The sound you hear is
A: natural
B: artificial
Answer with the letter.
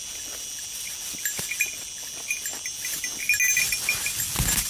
A